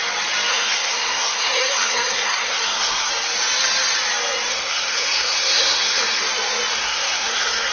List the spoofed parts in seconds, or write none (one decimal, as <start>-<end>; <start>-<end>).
0.5-3.1; 4.5-6.2; 6.7-7.7